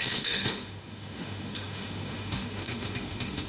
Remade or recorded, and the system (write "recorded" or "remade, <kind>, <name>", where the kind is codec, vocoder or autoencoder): remade, autoencoder, DAC-VAE